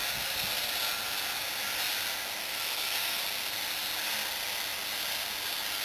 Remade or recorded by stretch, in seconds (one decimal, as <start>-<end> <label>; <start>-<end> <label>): 0.0-2.4 recorded; 2.4-3.2 remade; 3.2-5.8 recorded